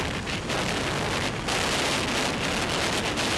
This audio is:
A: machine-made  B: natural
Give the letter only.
B